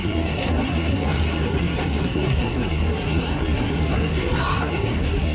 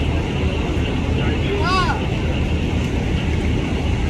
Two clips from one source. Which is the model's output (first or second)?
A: first